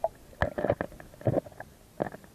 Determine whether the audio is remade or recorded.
recorded